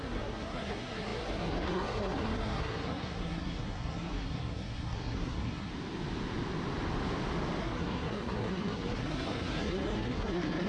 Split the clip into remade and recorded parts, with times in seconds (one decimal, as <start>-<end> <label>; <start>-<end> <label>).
0.0-5.7 remade; 5.7-7.6 recorded; 7.6-10.7 remade